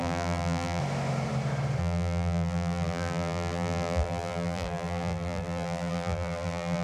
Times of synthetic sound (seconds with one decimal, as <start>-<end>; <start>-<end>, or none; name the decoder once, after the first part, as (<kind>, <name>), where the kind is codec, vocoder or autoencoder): 0.0-0.8 (vocoder, BigVGAN v2); 1.8-6.8